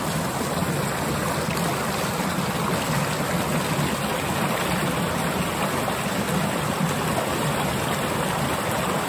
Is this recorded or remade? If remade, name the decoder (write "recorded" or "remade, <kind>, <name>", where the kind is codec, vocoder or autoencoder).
recorded